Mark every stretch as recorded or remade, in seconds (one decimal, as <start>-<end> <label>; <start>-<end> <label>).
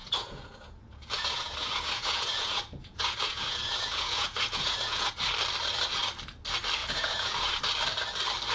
0.0-5.1 remade; 5.1-6.8 recorded; 6.8-7.6 remade; 7.6-8.5 recorded